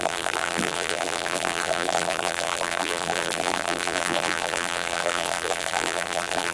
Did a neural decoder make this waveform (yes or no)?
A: yes